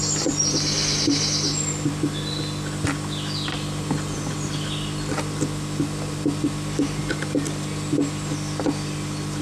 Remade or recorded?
recorded